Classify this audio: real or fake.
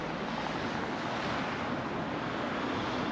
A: real